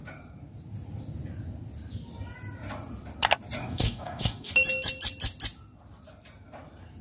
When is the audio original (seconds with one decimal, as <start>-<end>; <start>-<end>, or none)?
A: 0.0-3.6; 4.5-7.0

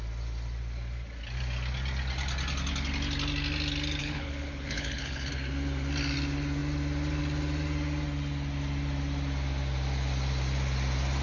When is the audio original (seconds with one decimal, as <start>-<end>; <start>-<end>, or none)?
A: 0.0-4.0; 5.3-11.2

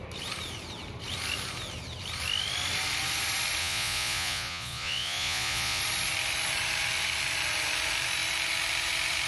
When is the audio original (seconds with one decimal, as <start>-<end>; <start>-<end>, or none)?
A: 0.0-3.6; 5.8-9.3

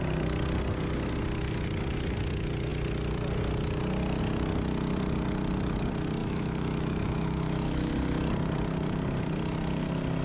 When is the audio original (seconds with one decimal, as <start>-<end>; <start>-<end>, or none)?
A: 0.0-6.2; 7.9-10.2

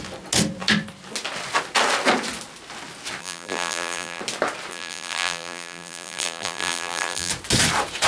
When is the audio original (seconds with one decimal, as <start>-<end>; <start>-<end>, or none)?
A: 0.0-3.2; 4.2-4.7; 7.3-8.1

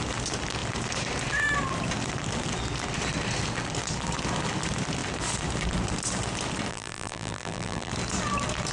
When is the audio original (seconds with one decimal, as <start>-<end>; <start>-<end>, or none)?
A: 0.0-6.7; 7.9-8.7

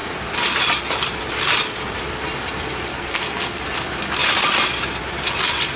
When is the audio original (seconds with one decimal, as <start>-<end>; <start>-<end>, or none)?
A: 0.0-2.9; 3.6-5.8

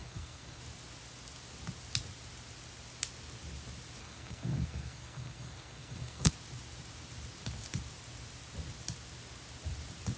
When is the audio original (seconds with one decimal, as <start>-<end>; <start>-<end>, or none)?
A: 0.6-4.0; 6.3-10.2